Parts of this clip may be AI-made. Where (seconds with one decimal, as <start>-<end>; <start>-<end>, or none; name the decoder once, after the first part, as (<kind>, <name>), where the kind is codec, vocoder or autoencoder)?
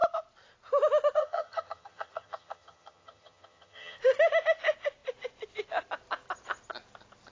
1.2-4.0 (vocoder, HiFi-GAN)